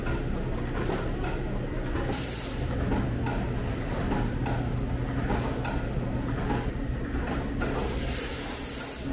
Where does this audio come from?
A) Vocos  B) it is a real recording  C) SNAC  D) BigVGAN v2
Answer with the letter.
B